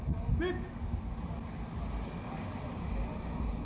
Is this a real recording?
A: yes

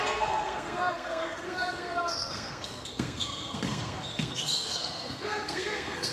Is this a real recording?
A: no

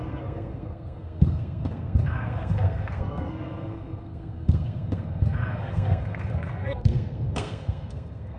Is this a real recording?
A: no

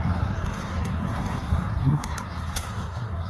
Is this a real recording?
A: no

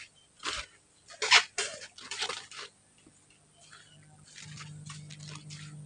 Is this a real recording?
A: yes